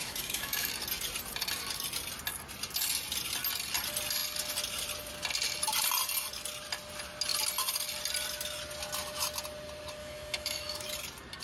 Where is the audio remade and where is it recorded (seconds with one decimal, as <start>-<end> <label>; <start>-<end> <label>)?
0.0-0.7 remade; 0.7-10.0 recorded; 10.0-10.9 remade; 10.9-11.4 recorded